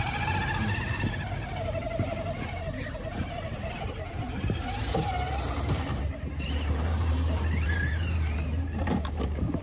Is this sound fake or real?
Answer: fake